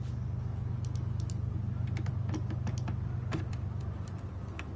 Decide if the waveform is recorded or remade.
recorded